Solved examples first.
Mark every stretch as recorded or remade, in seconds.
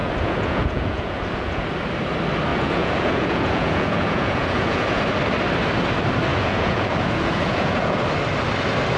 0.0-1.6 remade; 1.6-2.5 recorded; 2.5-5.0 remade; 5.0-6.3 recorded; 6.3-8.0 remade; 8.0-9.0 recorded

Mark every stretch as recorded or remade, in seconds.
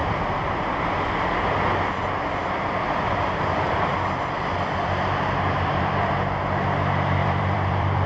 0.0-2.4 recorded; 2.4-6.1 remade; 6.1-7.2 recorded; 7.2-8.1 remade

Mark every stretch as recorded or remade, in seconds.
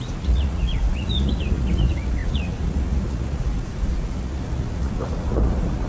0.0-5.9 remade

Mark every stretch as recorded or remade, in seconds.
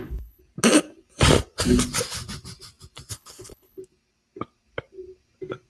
0.0-0.4 remade; 0.4-3.1 recorded; 3.1-3.8 remade; 3.8-5.7 recorded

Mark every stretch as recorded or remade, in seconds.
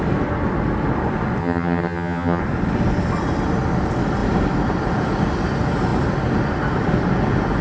0.0-1.4 recorded; 1.4-2.4 remade; 2.4-7.6 recorded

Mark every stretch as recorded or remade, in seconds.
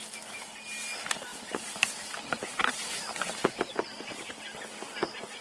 0.0-1.3 recorded; 1.3-3.5 remade; 3.5-5.4 recorded